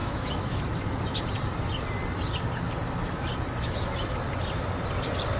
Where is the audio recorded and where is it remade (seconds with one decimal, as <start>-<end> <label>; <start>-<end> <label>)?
0.0-0.6 remade; 0.6-5.4 recorded